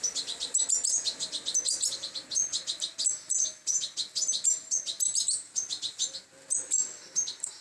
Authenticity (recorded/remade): recorded